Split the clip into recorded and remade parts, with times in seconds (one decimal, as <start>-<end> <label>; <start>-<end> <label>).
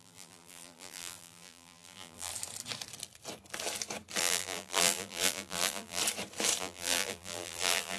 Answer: 0.0-2.3 remade; 2.3-4.2 recorded; 4.2-6.0 remade; 6.0-6.6 recorded; 6.6-8.0 remade